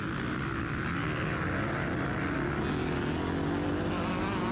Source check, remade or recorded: recorded